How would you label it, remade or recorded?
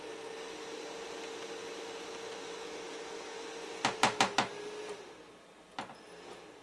recorded